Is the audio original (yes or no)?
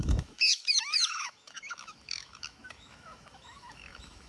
no